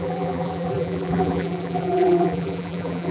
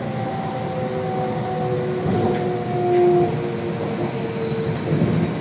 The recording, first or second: second